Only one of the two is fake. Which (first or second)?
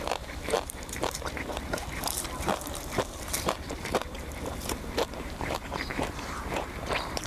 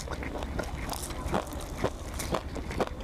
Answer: first